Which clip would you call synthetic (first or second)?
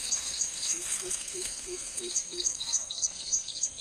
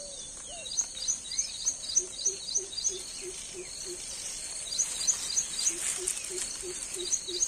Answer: first